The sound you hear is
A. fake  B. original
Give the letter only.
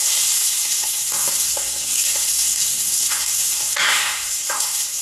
A